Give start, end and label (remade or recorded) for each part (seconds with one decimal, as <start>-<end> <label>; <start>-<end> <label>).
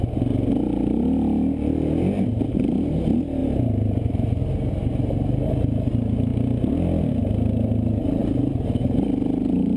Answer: 0.0-9.8 recorded